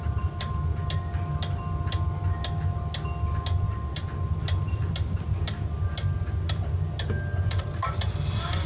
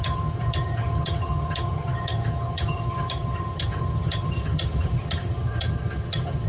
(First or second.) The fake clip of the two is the second